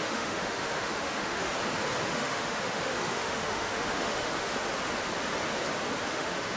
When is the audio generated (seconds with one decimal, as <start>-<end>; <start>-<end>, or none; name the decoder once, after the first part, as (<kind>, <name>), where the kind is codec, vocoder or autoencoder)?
0.0-1.5 (autoencoder, DAC-VAE); 2.0-4.5; 6.1-6.6